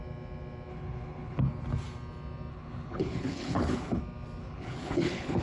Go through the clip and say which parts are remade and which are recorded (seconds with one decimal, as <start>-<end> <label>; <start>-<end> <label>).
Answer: 0.0-0.7 recorded; 0.7-1.4 remade; 1.4-2.5 recorded; 2.5-4.0 remade; 4.0-4.4 recorded; 4.4-5.4 remade